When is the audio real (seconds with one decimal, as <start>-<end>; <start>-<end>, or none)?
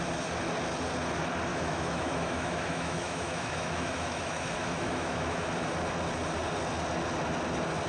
0.0-1.5; 5.5-7.9